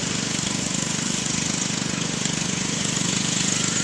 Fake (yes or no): yes